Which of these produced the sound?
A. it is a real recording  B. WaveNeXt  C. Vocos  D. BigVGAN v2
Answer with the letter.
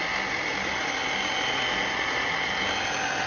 A